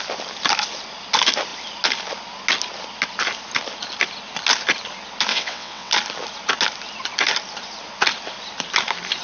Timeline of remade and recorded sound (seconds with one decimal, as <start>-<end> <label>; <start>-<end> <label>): 0.0-5.3 recorded; 5.3-5.9 remade; 5.9-9.2 recorded